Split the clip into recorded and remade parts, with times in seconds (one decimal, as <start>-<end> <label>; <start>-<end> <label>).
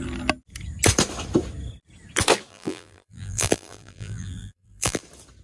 0.0-2.5 recorded; 2.5-5.0 remade; 5.0-5.4 recorded